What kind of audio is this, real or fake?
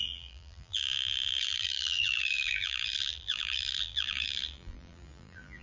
fake